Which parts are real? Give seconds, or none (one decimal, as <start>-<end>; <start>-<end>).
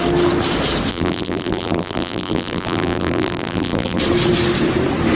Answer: 0.0-0.9; 4.0-5.2